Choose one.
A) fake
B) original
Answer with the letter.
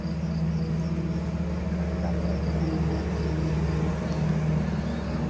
B